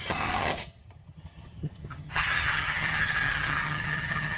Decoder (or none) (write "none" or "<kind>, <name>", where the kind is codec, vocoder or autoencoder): vocoder, HiFi-GAN